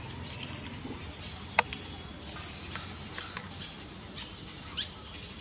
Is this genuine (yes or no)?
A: yes